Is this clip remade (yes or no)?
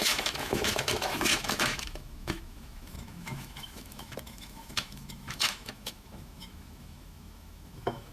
yes